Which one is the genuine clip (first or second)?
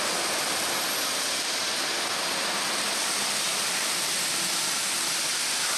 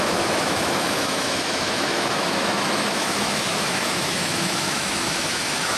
first